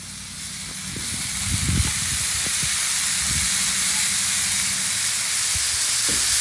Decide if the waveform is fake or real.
real